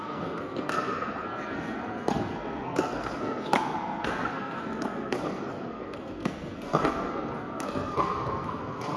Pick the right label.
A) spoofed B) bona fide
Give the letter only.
A